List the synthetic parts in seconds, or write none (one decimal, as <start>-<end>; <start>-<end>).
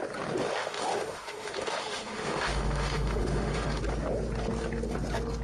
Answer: 0.6-3.8